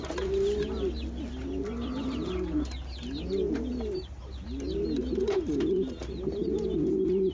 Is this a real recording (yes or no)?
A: yes